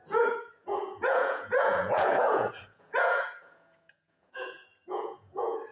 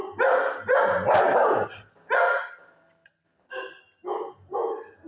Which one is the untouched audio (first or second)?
second